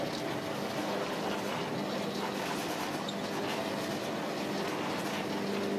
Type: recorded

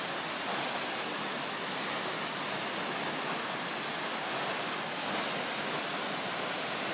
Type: recorded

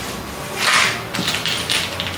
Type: recorded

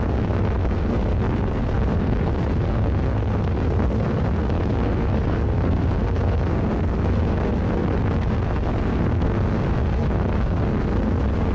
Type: remade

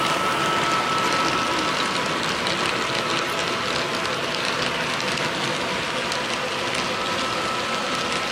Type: recorded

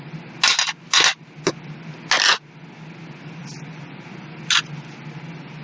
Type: recorded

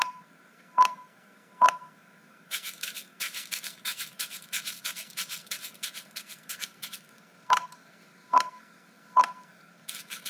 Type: remade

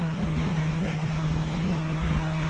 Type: remade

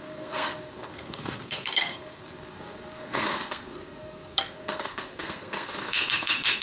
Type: remade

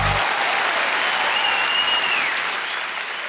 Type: recorded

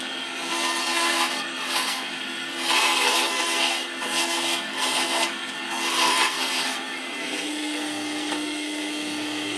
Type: remade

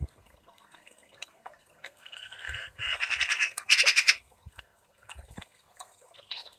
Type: remade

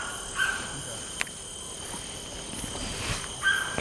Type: recorded